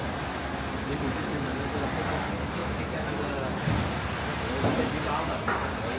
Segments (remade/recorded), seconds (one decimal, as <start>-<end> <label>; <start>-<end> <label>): 0.0-2.6 recorded; 2.6-3.2 remade; 3.2-6.0 recorded